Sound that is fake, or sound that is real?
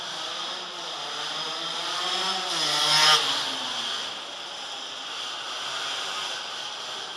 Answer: real